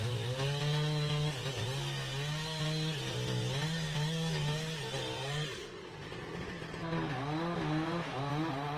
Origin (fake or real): real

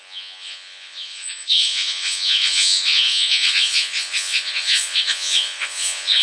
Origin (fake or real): fake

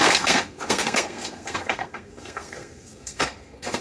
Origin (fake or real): fake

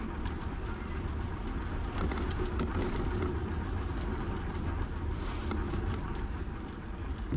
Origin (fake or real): real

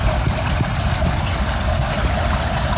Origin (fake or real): real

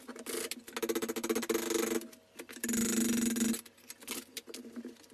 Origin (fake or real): real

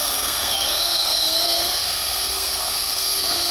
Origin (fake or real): fake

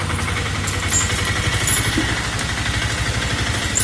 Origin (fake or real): real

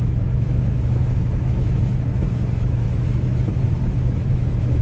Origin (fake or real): fake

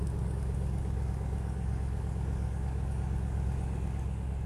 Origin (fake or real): fake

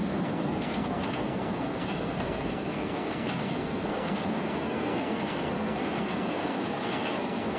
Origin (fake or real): fake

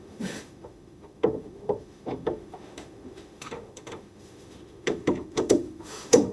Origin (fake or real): fake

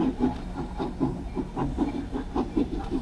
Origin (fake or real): real